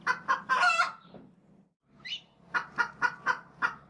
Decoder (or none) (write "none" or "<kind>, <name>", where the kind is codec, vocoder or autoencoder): none